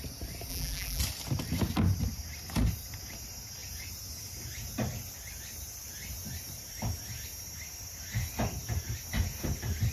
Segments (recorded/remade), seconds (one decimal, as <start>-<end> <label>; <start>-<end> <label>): 0.0-0.5 recorded; 0.5-1.0 remade; 1.0-9.9 recorded